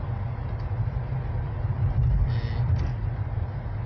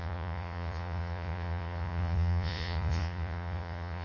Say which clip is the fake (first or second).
second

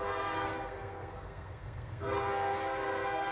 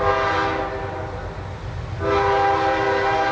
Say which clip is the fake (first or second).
first